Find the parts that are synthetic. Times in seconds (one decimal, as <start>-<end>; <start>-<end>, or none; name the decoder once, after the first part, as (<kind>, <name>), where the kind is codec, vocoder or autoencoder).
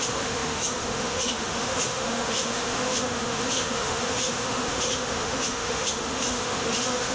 0.0-7.1 (autoencoder, DAC-VAE)